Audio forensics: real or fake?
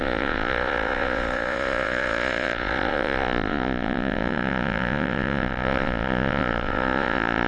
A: fake